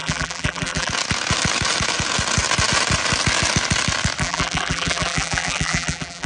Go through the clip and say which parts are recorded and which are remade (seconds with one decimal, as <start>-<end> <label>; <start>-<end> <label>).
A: 0.0-0.9 remade; 0.9-4.2 recorded; 4.2-6.3 remade